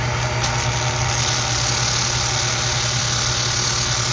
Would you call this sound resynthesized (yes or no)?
no